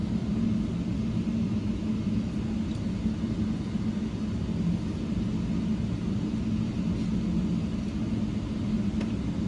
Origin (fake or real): real